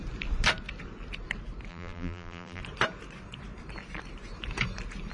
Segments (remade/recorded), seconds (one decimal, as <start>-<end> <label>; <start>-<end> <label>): 0.0-1.7 recorded; 1.7-2.6 remade; 2.6-5.1 recorded